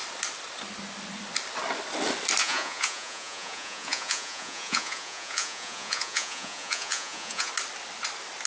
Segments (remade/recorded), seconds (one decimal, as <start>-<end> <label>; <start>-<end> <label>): 0.0-2.4 recorded; 2.4-7.5 remade; 7.5-8.5 recorded